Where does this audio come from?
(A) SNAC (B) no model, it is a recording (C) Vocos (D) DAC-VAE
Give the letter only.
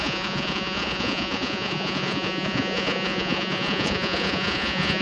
C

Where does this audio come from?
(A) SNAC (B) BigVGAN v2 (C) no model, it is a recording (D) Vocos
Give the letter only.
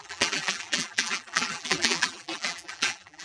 B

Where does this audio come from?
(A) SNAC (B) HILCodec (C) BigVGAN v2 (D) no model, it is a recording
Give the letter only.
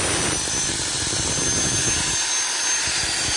D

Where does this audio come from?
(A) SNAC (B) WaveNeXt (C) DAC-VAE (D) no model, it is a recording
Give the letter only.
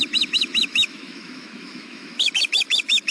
C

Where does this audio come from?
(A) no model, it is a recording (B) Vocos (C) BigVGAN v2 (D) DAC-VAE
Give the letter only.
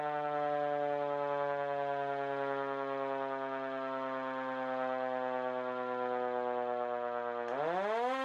A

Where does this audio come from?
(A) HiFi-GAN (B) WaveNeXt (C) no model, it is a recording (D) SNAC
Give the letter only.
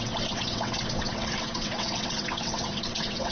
B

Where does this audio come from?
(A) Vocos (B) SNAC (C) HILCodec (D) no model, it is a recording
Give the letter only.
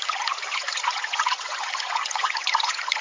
A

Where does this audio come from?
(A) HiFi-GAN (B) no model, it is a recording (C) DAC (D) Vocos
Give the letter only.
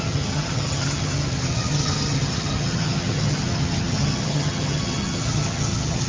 A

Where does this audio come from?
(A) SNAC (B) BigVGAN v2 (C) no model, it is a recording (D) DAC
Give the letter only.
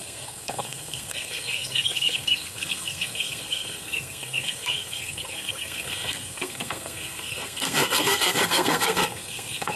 A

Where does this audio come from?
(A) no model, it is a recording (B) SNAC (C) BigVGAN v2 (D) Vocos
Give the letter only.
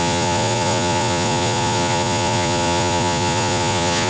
D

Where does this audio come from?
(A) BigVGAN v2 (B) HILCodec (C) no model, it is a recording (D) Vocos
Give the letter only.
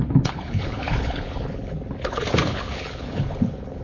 B